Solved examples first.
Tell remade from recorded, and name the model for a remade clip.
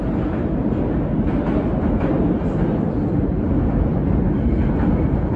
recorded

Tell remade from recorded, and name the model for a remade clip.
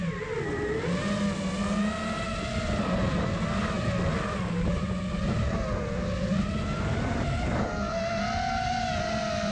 recorded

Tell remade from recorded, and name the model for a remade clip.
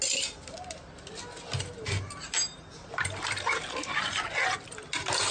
recorded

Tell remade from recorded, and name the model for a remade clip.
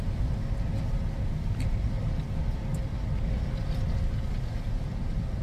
recorded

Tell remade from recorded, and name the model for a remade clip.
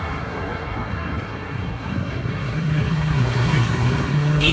remade, codec, SNAC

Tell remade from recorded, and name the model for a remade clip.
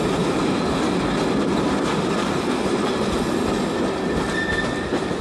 recorded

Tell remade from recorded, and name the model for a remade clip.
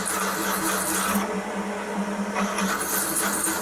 recorded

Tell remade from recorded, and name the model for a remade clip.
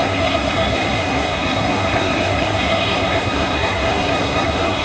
remade, codec, SNAC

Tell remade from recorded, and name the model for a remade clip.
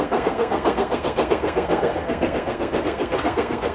remade, codec, SNAC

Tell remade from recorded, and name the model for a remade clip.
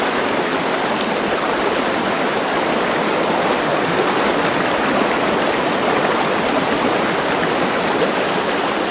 recorded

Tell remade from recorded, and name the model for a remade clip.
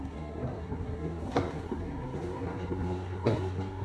remade, codec, SNAC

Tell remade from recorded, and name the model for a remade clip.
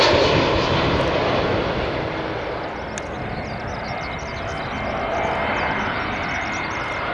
recorded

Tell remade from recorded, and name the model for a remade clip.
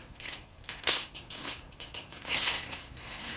remade, codec, SNAC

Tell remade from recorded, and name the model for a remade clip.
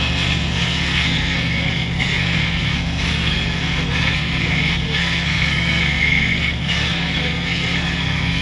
remade, codec, SNAC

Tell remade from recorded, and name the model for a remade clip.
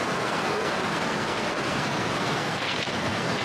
remade, codec, SNAC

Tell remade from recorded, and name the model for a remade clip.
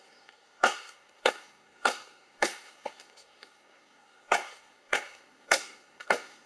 remade, codec, SNAC